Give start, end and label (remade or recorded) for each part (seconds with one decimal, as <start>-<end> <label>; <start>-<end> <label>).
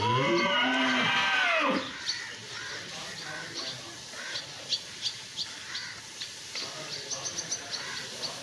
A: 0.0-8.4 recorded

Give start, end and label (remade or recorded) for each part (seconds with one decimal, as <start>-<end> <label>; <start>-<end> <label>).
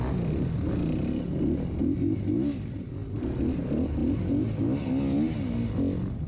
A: 0.0-3.0 recorded; 3.0-3.6 remade; 3.6-6.3 recorded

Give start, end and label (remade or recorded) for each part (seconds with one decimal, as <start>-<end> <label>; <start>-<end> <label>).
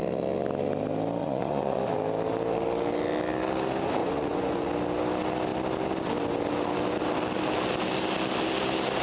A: 0.0-1.2 recorded; 1.2-1.8 remade; 1.8-4.0 recorded; 4.0-4.7 remade; 4.7-9.0 recorded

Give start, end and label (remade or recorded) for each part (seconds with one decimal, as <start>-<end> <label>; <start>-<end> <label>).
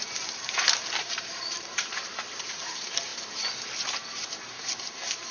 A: 0.0-5.3 remade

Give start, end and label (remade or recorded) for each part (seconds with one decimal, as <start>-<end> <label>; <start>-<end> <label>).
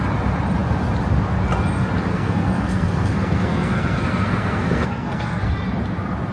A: 0.0-2.1 recorded; 2.1-5.5 remade; 5.5-6.3 recorded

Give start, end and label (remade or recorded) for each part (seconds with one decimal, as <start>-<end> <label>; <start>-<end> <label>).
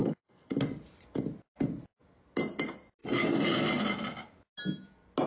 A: 0.0-0.6 remade; 0.6-5.3 recorded